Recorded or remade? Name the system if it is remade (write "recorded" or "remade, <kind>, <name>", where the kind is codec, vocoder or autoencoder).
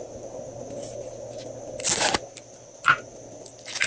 recorded